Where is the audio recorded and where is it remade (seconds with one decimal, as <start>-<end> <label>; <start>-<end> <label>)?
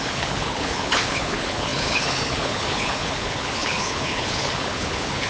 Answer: 0.0-5.3 remade